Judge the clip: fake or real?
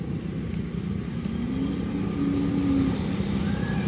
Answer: real